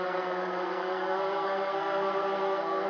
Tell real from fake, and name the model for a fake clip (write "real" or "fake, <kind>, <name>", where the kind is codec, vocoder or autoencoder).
fake, codec, SNAC